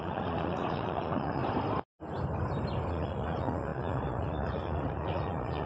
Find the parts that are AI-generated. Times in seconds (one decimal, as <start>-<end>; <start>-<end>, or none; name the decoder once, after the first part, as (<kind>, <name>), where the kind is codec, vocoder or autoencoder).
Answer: 0.0-1.4 (vocoder, Vocos); 2.9-5.7